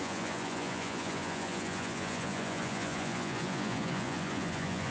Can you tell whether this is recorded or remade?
remade